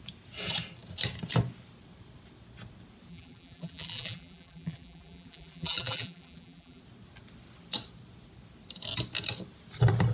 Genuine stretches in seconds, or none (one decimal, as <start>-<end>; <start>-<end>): 0.0-3.1; 6.8-10.1